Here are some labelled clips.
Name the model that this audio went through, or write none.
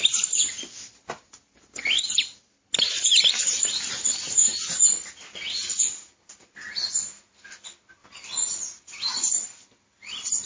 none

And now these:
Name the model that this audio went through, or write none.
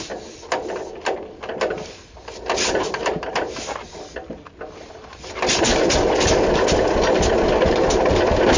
none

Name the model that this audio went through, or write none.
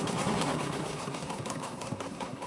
codec, SNAC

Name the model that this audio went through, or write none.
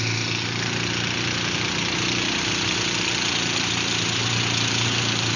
none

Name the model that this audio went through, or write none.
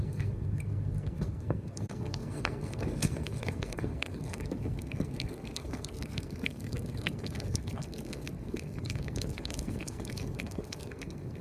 codec, SNAC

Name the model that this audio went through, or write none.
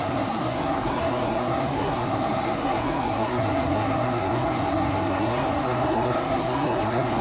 codec, SNAC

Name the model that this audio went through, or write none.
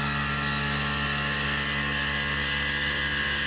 codec, DAC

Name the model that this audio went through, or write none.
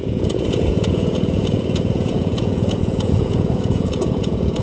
vocoder, Vocos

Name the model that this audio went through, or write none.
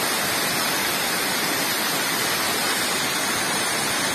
none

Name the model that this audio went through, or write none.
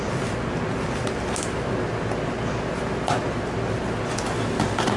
none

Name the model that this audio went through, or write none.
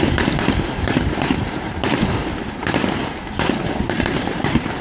vocoder, BigVGAN v2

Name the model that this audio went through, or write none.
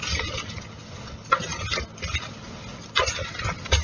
none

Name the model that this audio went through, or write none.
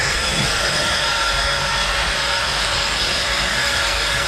codec, SNAC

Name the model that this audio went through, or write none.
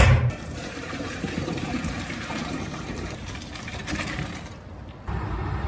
vocoder, BigVGAN v2